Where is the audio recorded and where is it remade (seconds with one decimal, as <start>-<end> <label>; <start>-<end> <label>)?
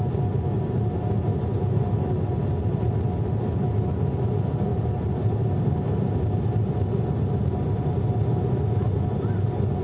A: 0.0-1.3 recorded; 1.3-2.1 remade; 2.1-9.8 recorded